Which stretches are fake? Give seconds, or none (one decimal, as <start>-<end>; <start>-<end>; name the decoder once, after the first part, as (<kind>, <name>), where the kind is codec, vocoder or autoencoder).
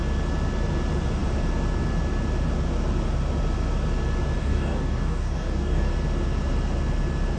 4.4-5.9 (codec, DAC)